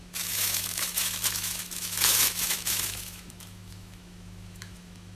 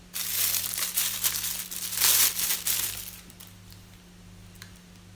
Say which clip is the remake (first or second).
first